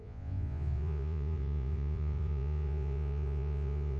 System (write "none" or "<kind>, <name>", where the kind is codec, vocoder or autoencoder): vocoder, Vocos